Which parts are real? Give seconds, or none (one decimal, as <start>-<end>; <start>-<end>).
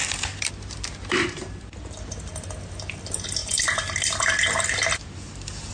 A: 0.0-5.7